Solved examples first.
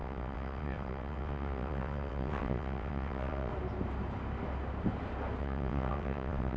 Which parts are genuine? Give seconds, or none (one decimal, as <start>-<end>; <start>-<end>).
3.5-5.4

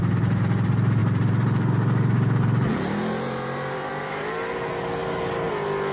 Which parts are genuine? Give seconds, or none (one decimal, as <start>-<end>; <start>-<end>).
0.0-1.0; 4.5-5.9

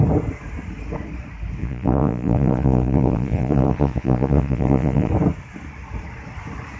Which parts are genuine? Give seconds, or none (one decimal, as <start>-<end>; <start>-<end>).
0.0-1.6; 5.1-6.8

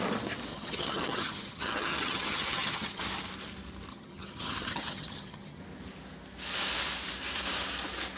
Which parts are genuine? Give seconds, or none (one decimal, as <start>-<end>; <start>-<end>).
0.0-0.5; 3.0-3.9; 5.6-8.2

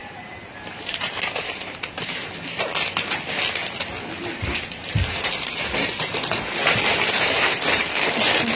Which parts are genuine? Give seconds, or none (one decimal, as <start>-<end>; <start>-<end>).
2.6-4.2; 8.0-8.6

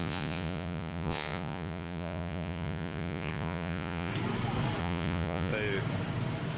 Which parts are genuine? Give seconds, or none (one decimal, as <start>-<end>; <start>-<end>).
4.1-4.8; 5.5-6.6

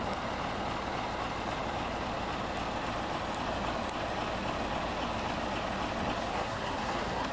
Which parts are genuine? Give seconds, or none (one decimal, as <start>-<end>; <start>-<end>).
0.0-6.3